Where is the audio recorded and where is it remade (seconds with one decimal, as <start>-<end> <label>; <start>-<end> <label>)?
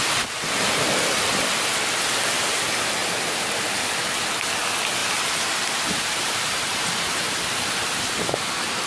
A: 0.0-3.0 recorded; 3.0-3.8 remade; 3.8-5.0 recorded; 5.0-7.4 remade; 7.4-8.9 recorded